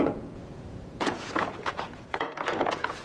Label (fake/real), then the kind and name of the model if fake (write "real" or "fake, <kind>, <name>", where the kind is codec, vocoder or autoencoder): fake, vocoder, Vocos